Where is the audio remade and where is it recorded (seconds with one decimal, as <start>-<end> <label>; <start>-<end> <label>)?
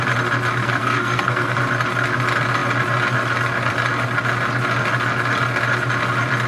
0.0-0.6 recorded; 0.6-1.6 remade; 1.6-6.5 recorded